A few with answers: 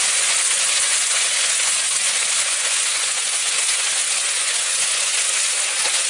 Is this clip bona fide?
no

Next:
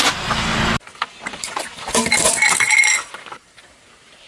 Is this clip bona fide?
yes